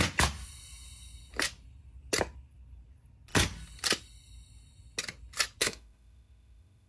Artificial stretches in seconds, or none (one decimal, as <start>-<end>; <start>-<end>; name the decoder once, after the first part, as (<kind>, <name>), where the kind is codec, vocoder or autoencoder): 5.6-6.9 (autoencoder, DAC-VAE)